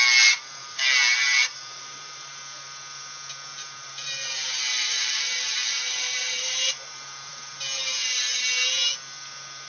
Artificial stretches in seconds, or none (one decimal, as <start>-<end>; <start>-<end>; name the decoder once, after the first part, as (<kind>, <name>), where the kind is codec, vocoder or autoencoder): 0.6-2.4 (vocoder, BigVGAN v2); 3.5-7.6